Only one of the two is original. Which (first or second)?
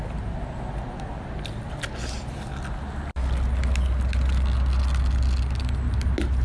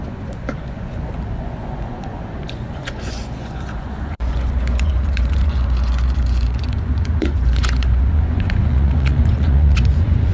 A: first